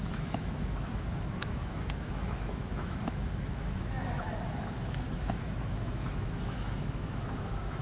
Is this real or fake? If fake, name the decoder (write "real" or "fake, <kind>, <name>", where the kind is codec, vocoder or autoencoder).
fake, autoencoder, DAC-VAE